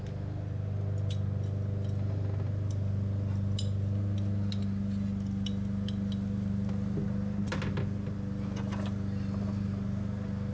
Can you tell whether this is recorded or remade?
recorded